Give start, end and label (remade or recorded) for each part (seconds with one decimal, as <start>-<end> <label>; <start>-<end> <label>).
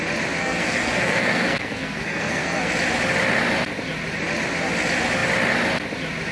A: 0.0-0.4 recorded; 0.4-2.7 remade; 2.7-6.3 recorded